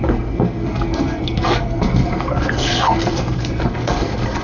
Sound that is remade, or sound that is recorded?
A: remade